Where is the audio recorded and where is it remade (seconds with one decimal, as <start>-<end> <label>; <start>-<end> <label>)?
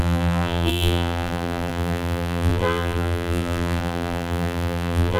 0.0-5.2 remade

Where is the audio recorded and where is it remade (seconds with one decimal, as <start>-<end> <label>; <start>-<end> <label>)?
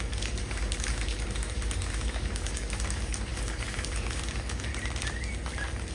0.0-4.7 remade; 4.7-5.9 recorded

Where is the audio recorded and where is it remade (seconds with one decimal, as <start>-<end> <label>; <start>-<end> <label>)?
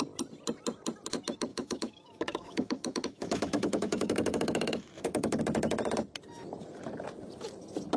0.0-1.5 recorded; 1.5-5.4 remade; 5.4-8.0 recorded